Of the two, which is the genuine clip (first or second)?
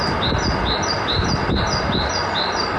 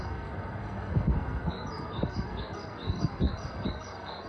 first